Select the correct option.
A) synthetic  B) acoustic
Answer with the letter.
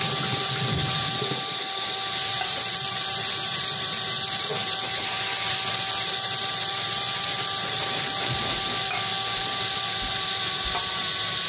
A